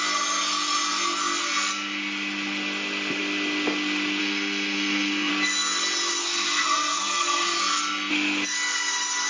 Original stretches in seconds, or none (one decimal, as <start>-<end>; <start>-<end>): 0.0-4.2; 5.3-6.2; 7.6-9.3